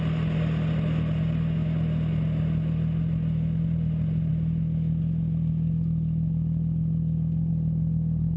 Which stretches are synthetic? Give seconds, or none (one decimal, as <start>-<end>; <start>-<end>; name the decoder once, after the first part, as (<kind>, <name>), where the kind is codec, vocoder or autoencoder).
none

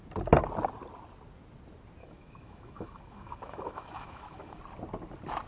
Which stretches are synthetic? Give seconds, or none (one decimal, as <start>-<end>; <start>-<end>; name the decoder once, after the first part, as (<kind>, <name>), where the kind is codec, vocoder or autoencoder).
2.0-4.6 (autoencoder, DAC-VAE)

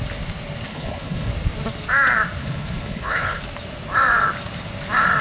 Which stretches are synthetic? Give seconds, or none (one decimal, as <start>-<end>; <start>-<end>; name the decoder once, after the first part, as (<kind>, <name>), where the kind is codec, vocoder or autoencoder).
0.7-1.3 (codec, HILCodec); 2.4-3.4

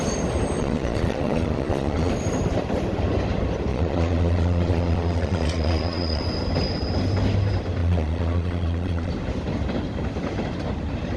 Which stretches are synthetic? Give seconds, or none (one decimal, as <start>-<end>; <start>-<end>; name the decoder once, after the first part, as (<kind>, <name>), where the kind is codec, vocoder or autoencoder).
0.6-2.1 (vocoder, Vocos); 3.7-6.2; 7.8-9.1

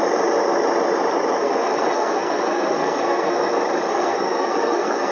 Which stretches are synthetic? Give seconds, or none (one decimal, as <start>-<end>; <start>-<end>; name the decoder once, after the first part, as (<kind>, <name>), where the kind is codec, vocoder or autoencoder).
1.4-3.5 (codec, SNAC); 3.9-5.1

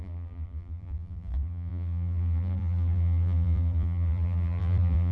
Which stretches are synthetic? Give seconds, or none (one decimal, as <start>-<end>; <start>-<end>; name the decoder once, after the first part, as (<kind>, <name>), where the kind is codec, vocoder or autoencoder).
0.0-5.1 (vocoder, BigVGAN v2)

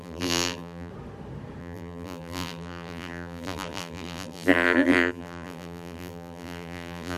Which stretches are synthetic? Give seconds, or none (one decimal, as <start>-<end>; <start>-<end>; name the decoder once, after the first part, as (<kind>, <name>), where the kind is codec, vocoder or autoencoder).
0.0-0.9 (vocoder, BigVGAN v2); 1.6-7.2

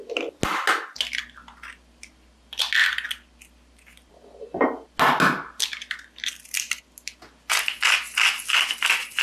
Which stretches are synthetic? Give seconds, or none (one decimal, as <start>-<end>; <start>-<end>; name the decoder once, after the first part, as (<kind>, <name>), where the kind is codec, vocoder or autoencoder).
none